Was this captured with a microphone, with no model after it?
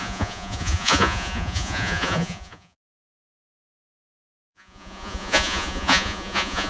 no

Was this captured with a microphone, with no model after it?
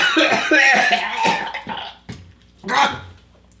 yes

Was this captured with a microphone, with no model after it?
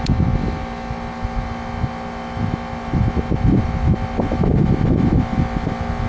yes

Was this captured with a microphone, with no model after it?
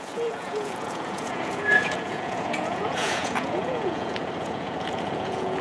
no